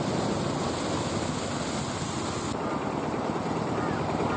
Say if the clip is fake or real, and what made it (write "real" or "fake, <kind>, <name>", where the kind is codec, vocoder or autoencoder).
real